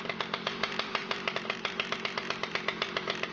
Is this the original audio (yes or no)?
yes